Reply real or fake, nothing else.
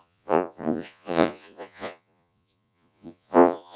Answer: fake